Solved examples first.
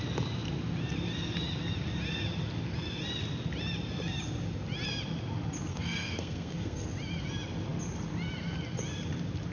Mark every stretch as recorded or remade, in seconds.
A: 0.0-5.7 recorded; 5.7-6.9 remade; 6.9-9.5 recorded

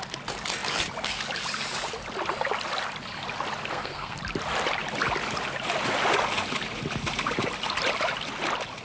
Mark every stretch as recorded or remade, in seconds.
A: 0.0-3.7 recorded; 3.7-4.2 remade; 4.2-8.8 recorded

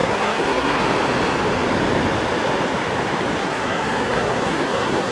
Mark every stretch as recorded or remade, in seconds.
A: 0.0-0.8 remade; 0.8-3.4 recorded; 3.4-5.1 remade

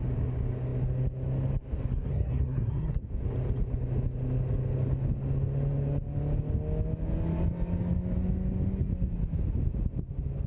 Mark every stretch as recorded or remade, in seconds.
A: 0.0-1.9 recorded; 1.9-3.0 remade; 3.0-10.5 recorded

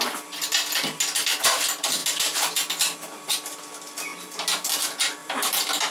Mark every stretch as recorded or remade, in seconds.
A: 0.0-2.0 recorded; 2.0-2.5 remade; 2.5-5.2 recorded; 5.2-5.9 remade

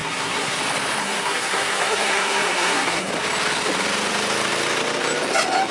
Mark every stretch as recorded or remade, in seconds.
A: 0.0-0.6 remade; 0.6-1.0 recorded; 1.0-3.1 remade; 3.1-5.7 recorded

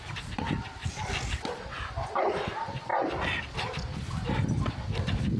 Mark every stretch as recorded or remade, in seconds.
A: 0.0-5.4 recorded